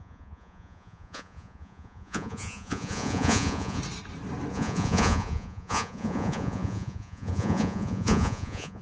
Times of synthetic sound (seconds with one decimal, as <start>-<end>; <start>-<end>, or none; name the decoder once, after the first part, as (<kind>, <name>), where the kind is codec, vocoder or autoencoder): 0.0-3.8 (vocoder, Vocos); 4.5-8.8